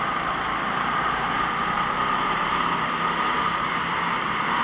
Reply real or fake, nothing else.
real